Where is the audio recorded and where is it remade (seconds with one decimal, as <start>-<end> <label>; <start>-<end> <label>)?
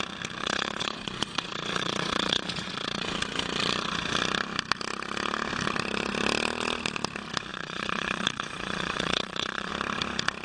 0.0-0.4 recorded; 0.4-3.1 remade; 3.1-7.5 recorded; 7.5-9.7 remade; 9.7-10.4 recorded